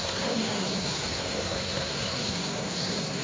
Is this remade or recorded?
remade